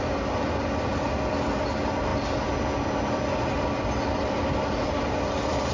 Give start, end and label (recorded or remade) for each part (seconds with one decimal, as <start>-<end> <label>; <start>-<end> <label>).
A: 0.0-5.7 recorded